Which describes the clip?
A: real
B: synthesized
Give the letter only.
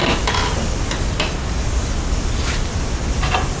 A